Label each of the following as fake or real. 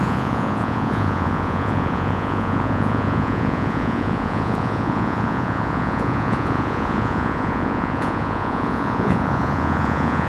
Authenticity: fake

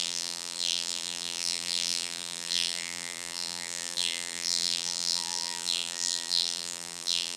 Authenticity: fake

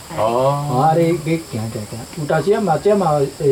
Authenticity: real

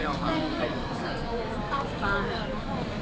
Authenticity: fake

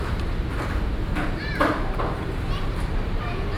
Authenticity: fake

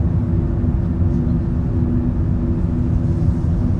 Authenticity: real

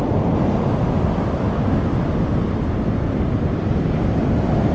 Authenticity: real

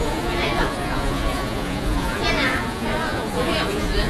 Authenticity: fake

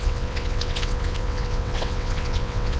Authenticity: fake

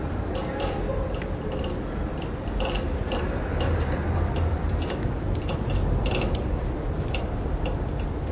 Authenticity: fake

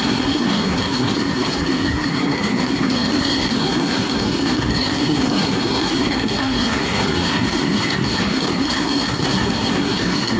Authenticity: fake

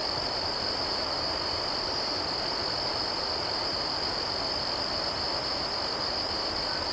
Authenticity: real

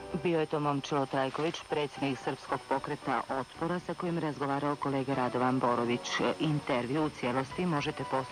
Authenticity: real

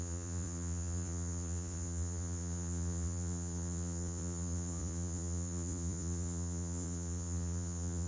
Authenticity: fake